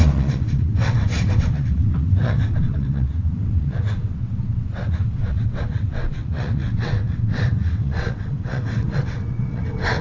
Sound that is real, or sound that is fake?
fake